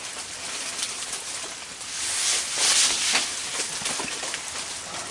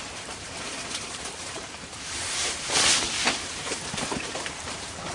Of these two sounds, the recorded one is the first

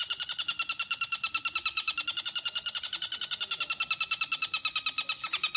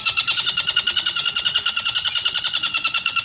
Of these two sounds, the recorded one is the first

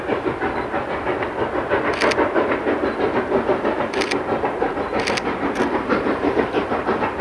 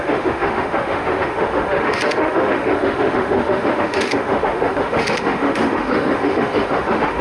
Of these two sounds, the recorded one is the first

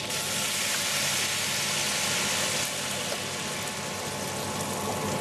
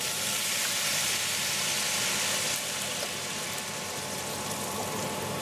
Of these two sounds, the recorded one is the first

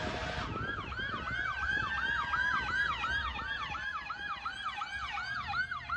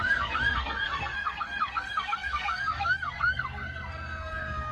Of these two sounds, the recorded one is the first